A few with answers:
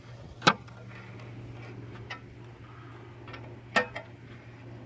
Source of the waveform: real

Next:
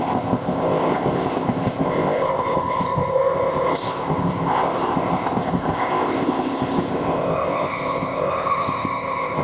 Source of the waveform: fake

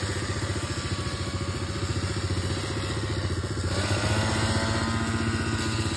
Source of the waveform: real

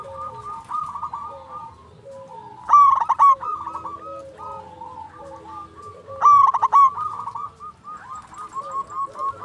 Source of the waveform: real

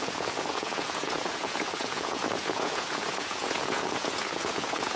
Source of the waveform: fake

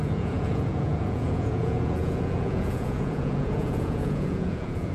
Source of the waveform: fake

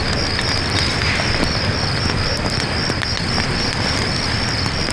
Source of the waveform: real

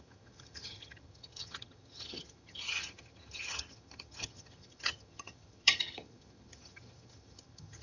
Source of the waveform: fake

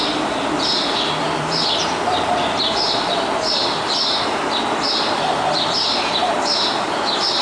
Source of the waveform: fake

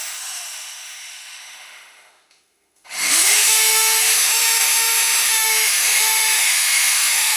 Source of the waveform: fake